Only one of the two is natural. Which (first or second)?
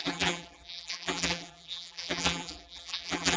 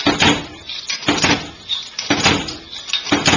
second